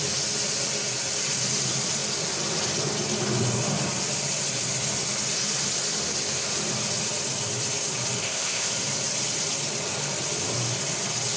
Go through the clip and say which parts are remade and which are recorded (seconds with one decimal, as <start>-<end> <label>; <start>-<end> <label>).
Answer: 0.0-8.2 recorded; 8.2-8.7 remade; 8.7-11.4 recorded